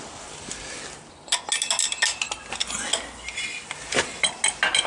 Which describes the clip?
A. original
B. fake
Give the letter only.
A